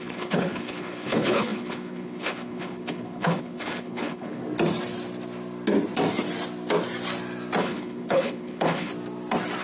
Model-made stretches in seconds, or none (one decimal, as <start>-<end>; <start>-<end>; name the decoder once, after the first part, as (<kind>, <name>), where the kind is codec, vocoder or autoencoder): 0.0-4.4 (codec, HILCodec); 7.6-8.9